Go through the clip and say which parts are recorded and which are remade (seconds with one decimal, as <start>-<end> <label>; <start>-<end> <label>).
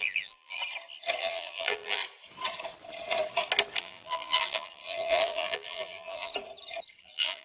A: 0.0-0.6 remade; 0.6-1.2 recorded; 1.2-2.0 remade; 2.0-3.8 recorded; 3.8-6.3 remade; 6.3-7.0 recorded; 7.0-7.4 remade